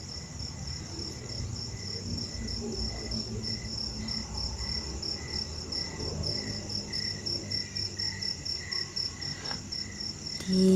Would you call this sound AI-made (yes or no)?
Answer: no